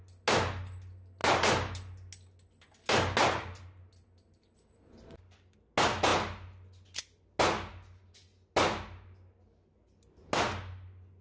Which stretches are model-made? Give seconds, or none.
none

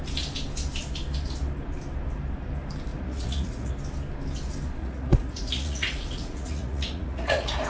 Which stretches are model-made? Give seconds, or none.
2.9-3.7 (vocoder, Vocos); 4.8-7.7

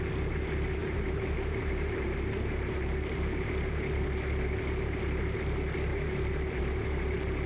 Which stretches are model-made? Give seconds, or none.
0.8-3.5 (vocoder, BigVGAN v2); 5.9-6.6